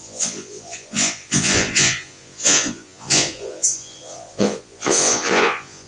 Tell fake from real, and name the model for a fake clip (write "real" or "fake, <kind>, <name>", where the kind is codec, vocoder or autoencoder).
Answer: fake, vocoder, Vocos